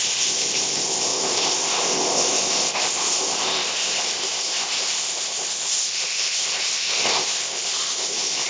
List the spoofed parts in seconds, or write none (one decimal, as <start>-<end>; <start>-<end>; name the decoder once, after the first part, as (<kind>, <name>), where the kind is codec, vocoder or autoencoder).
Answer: 0.0-8.5 (codec, ZipCodec)